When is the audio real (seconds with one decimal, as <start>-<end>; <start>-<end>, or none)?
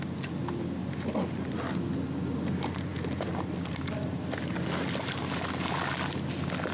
0.0-0.8; 1.5-2.9; 3.7-6.7